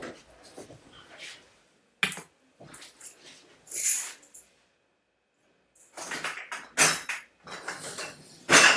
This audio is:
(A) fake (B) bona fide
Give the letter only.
B